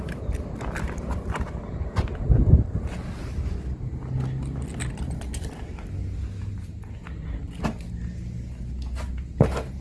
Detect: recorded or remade recorded